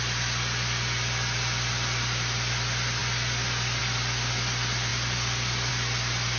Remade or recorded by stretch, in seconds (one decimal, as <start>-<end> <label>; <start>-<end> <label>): 0.0-6.4 recorded